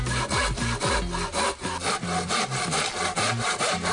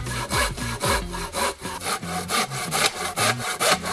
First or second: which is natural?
first